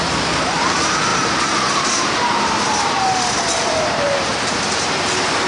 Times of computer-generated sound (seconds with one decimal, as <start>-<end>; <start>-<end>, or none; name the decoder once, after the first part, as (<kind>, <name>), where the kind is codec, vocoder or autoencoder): 0.0-5.5 (vocoder, BigVGAN v2)